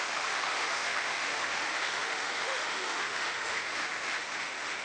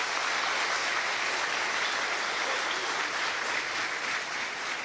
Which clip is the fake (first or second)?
first